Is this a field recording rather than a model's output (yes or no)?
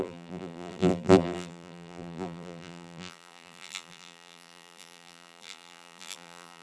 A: no